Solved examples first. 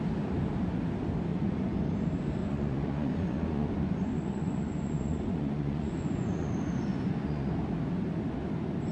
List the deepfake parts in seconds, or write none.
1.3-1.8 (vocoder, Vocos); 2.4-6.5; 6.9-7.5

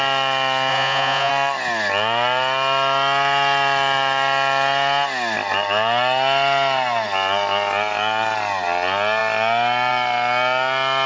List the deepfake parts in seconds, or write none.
0.7-1.3 (vocoder, Vocos)

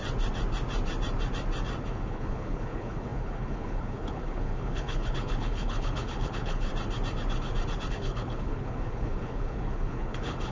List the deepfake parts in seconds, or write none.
1.8-6.7 (codec, HILCodec); 7.9-10.5